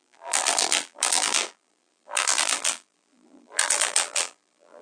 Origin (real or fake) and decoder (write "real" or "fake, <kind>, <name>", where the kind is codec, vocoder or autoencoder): fake, vocoder, BigVGAN v2